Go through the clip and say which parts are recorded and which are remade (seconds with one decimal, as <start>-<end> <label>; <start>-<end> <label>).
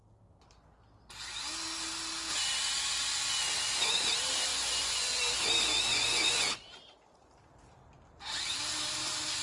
0.0-4.5 recorded; 4.5-5.2 remade; 5.2-5.9 recorded; 5.9-6.6 remade; 6.6-9.4 recorded